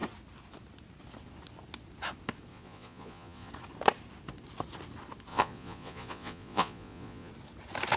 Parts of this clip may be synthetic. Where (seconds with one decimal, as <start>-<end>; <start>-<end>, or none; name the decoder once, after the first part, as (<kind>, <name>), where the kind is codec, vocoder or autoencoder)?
2.5-3.5 (vocoder, Vocos); 5.3-7.3